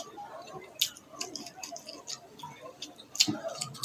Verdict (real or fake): real